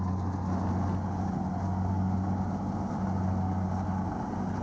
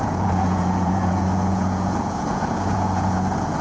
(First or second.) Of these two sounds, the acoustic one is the first